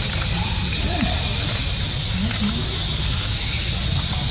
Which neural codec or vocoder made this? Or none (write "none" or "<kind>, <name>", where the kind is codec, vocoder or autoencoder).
none